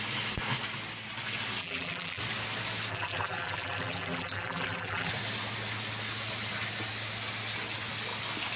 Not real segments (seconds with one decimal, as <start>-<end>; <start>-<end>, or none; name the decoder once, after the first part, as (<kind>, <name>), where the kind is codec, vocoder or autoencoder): 1.6-2.2 (vocoder, BigVGAN v2); 2.9-5.1